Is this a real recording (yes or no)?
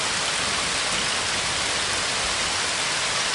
yes